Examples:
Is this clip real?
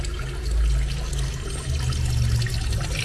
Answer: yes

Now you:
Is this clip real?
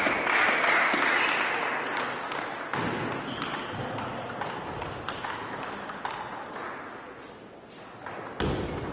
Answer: yes